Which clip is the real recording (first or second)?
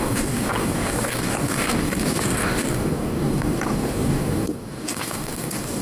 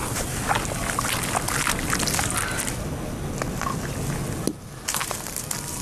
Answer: second